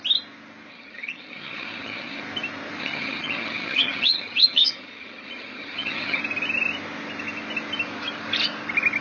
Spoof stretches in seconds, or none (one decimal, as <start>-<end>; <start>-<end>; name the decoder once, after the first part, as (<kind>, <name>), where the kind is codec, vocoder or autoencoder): 0.7-2.2 (vocoder, HiFi-GAN); 2.8-6.2